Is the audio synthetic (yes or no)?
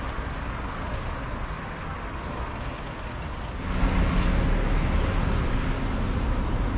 no